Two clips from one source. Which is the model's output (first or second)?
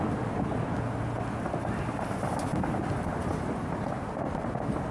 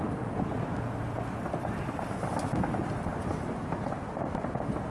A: second